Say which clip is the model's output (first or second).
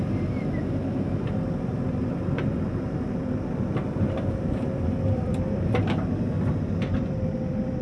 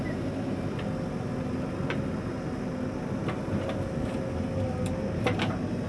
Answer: first